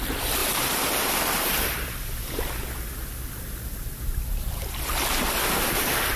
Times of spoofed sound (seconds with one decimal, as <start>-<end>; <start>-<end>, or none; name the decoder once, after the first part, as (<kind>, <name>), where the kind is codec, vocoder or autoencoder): 0.4-2.5 (vocoder, BigVGAN v2)